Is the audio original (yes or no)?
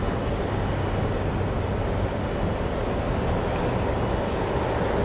yes